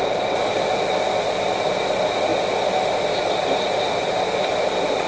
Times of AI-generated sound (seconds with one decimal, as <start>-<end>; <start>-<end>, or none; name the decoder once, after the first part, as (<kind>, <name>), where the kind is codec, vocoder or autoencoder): none